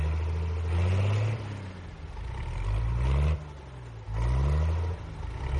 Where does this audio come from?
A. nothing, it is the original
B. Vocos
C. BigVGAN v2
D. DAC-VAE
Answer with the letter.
A